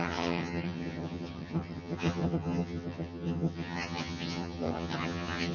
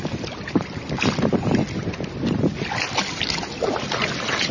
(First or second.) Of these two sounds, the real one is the second